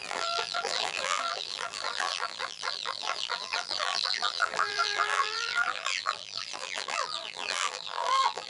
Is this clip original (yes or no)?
no